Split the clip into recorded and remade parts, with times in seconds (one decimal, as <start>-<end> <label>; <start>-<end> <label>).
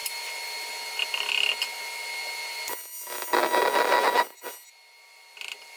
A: 0.0-5.8 recorded